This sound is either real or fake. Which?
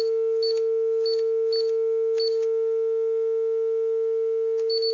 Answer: real